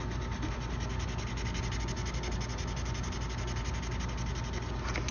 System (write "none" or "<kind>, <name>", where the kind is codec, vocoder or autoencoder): none